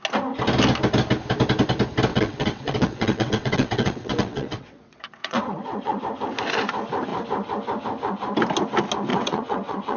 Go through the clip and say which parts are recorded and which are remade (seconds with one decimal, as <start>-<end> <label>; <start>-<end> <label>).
0.0-2.1 recorded; 2.1-6.0 remade; 6.0-9.1 recorded; 9.1-10.0 remade